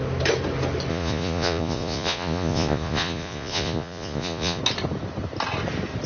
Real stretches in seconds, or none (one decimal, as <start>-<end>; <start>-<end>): 0.0-0.9; 4.6-6.1

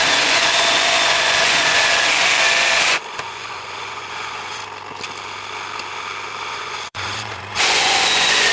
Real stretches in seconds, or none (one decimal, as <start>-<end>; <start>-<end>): 4.6-6.5

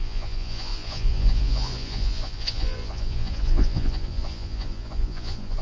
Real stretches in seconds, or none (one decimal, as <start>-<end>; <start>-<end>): none

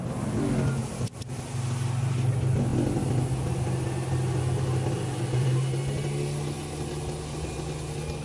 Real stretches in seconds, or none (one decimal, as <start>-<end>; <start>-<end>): 0.0-8.2